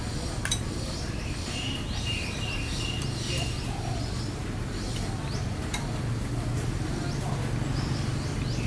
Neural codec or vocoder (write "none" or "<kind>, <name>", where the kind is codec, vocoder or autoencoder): none